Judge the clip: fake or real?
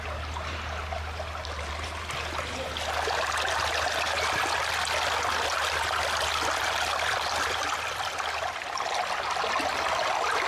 real